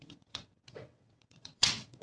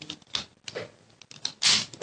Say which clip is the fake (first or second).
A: first